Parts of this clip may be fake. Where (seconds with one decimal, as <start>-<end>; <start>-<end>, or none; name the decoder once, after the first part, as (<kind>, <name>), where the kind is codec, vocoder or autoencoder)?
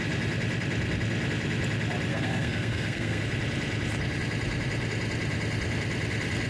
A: 2.1-3.2 (codec, SNAC)